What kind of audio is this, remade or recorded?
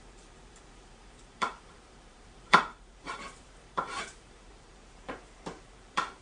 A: remade